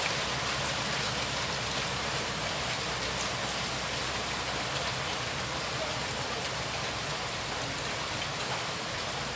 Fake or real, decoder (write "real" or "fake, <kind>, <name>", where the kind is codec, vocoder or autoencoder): real